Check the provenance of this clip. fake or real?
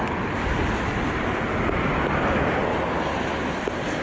real